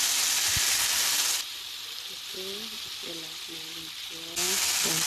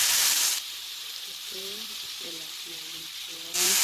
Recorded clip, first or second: first